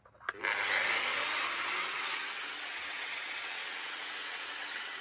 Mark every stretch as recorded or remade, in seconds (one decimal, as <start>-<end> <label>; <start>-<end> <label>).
0.0-1.8 recorded; 1.8-5.0 remade